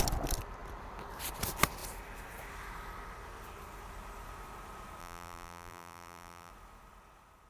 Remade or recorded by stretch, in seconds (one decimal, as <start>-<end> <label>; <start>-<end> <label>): 0.0-5.0 recorded; 5.0-6.5 remade; 6.5-7.5 recorded